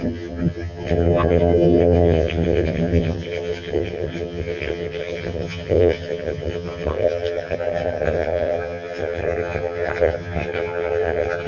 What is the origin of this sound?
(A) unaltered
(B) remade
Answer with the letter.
B